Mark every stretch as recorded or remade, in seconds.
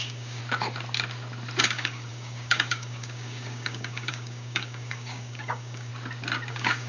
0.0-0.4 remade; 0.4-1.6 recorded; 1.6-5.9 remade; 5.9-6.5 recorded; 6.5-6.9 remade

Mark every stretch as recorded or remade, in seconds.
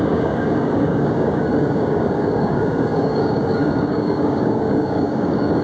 0.0-5.6 remade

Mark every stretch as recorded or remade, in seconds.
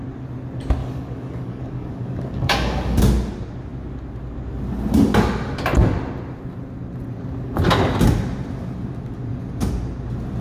0.0-0.8 recorded; 0.8-3.0 remade; 3.0-10.4 recorded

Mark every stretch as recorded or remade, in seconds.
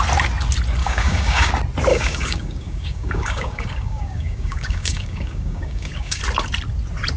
0.0-0.8 recorded; 0.8-1.5 remade; 1.5-1.9 recorded; 1.9-6.2 remade; 6.2-7.2 recorded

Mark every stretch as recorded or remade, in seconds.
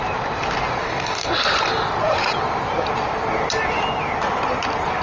0.0-0.8 recorded; 0.8-1.3 remade; 1.3-5.0 recorded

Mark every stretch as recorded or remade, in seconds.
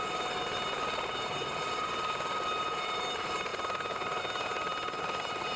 0.0-5.6 recorded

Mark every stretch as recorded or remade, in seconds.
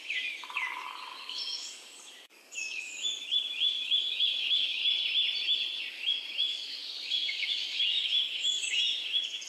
0.0-4.8 remade; 4.8-5.9 recorded; 5.9-9.5 remade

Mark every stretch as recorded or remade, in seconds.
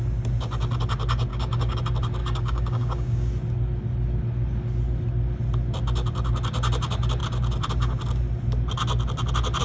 0.0-1.3 recorded; 1.3-1.8 remade; 1.8-2.2 recorded; 2.2-3.3 remade; 3.3-9.6 recorded